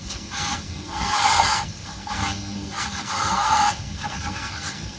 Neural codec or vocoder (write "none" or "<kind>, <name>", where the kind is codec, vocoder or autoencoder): codec, SNAC